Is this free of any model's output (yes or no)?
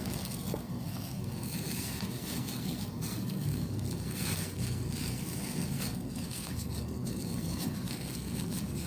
no